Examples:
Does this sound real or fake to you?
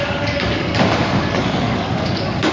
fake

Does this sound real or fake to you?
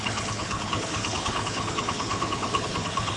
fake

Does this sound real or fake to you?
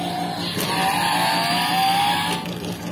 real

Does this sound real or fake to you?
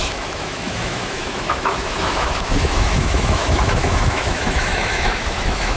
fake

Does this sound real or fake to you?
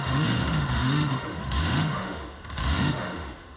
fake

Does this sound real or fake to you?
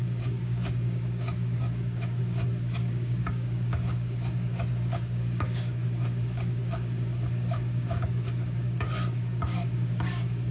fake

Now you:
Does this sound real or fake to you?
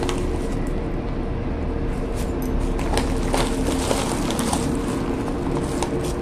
real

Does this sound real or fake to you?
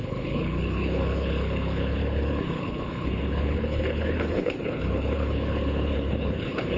fake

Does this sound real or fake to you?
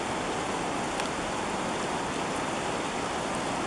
real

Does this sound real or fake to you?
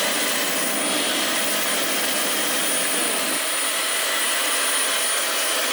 real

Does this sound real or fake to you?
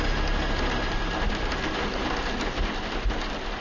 real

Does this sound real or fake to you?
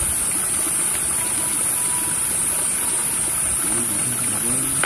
real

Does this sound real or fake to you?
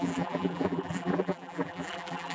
fake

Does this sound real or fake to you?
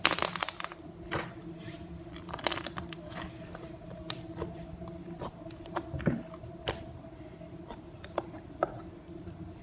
fake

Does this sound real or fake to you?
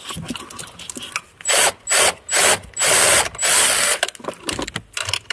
real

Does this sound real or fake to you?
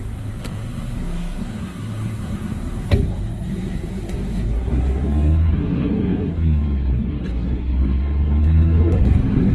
fake